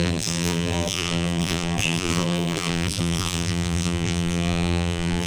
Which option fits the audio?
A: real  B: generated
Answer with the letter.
B